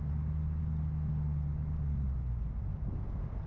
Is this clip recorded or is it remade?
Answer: recorded